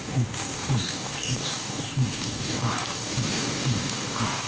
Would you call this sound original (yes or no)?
no